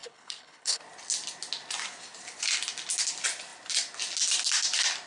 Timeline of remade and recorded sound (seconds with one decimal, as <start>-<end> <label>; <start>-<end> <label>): 0.0-0.8 remade; 0.8-5.1 recorded